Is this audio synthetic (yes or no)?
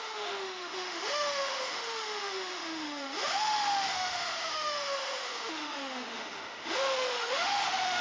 yes